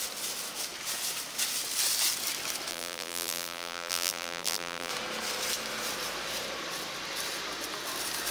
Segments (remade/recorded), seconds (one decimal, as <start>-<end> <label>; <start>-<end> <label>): 0.0-2.7 recorded; 2.7-4.9 remade; 4.9-8.3 recorded